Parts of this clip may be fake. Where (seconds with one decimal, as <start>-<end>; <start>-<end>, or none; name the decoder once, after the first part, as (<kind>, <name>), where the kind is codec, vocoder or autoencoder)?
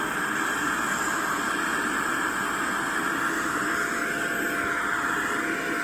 none